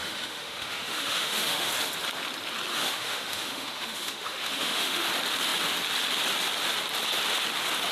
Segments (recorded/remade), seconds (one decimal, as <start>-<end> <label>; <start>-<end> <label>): 0.0-1.7 remade; 1.7-2.7 recorded; 2.7-5.1 remade; 5.1-7.9 recorded

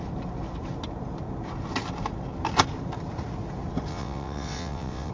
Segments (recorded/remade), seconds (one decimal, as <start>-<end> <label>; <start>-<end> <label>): 0.0-3.9 recorded; 3.9-5.1 remade

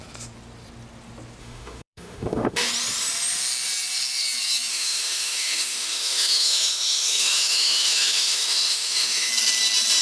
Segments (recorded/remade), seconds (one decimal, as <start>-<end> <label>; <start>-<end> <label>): 0.0-1.4 recorded; 1.4-2.7 remade; 2.7-4.7 recorded; 4.7-9.3 remade; 9.3-10.0 recorded

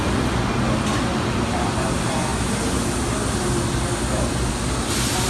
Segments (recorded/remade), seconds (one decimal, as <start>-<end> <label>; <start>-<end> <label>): 0.0-5.3 recorded

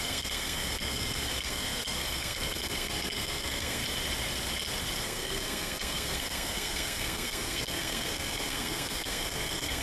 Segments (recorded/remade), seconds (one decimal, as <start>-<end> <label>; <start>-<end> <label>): 0.0-3.8 remade; 3.8-5.0 recorded; 5.0-9.8 remade